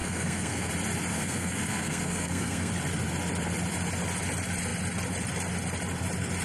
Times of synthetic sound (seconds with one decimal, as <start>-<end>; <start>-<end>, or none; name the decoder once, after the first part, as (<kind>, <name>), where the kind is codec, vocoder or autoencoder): 0.0-0.7 (codec, SNAC); 1.1-2.7